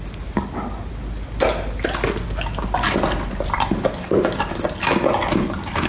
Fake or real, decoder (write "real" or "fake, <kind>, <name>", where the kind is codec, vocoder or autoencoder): real